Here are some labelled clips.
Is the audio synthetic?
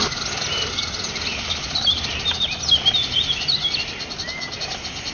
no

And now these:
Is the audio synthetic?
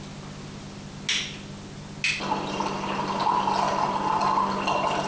no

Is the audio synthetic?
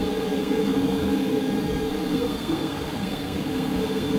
yes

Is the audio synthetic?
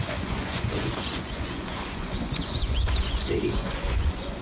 yes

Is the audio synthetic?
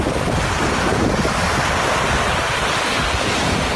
no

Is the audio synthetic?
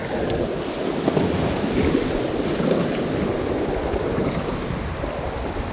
no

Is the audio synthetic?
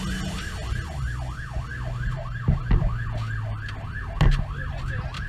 no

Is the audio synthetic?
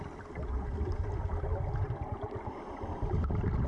no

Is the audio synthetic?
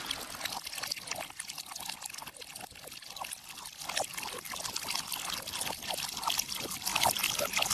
no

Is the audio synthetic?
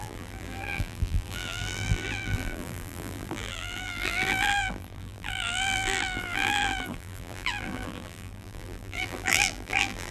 yes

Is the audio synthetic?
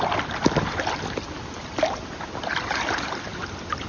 no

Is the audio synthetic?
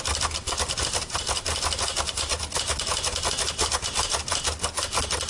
no